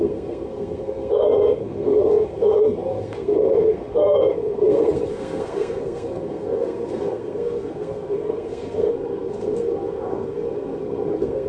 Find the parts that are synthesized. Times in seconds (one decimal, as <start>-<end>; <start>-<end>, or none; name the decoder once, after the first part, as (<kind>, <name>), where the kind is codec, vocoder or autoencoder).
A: 0.0-11.5 (codec, SNAC)